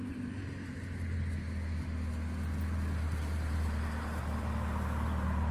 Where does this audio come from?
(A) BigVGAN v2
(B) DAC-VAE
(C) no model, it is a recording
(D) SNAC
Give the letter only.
C